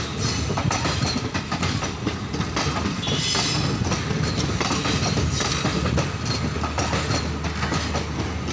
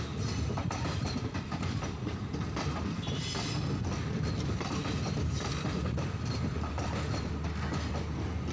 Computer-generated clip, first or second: second